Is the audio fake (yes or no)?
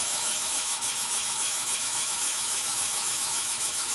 yes